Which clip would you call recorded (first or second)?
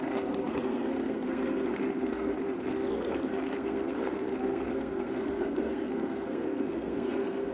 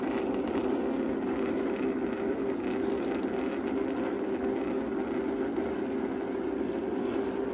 second